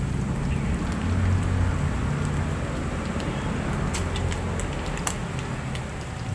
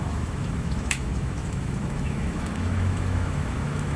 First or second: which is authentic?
first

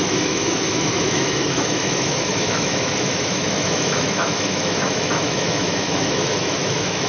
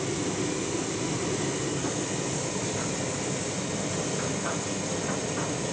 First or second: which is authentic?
second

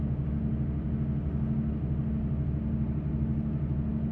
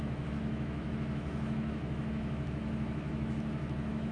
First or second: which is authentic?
first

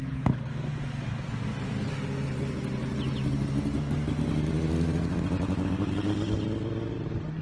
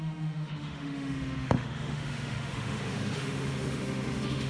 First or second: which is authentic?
first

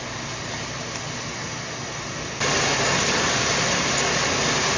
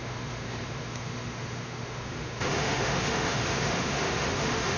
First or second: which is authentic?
first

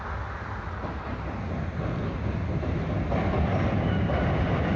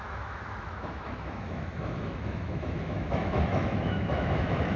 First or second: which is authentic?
first